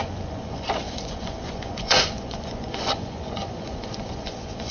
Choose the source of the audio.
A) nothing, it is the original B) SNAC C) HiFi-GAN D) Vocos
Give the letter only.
D